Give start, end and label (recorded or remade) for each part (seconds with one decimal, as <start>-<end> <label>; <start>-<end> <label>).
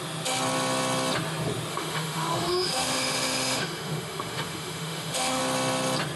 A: 0.0-1.7 recorded; 1.7-5.4 remade; 5.4-6.2 recorded